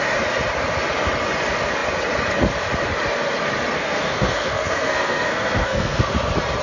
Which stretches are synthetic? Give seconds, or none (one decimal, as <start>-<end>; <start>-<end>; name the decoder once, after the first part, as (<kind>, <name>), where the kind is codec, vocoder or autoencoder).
3.7-6.1 (codec, SNAC)